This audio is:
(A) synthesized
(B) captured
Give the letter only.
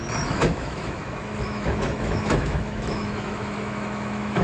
A